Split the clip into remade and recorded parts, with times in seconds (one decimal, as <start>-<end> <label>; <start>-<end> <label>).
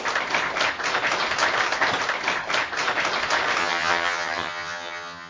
0.0-3.6 recorded; 3.6-5.3 remade